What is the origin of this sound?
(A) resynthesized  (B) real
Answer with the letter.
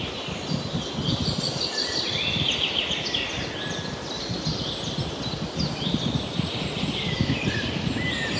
B